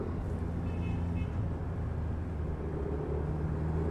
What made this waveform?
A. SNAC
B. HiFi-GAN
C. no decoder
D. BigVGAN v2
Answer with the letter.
C